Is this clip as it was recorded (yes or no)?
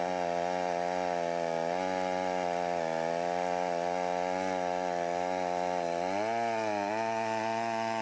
yes